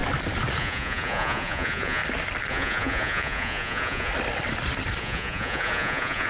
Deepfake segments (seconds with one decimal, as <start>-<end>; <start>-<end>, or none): 0.6-2.0; 2.5-4.1; 5.0-6.3